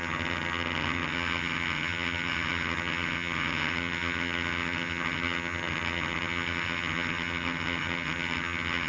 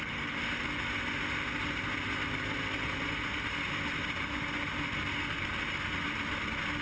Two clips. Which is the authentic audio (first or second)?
second